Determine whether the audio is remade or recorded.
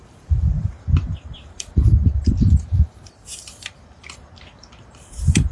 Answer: remade